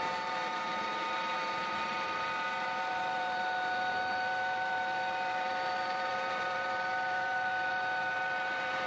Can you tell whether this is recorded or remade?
remade